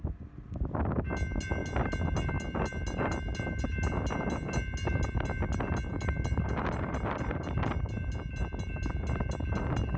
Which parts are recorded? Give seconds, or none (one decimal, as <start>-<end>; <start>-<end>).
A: 0.0-10.0